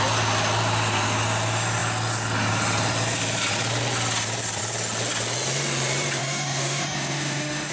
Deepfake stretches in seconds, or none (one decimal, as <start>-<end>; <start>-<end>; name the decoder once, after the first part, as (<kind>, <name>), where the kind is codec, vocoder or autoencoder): 6.2-7.7 (autoencoder, DAC-VAE)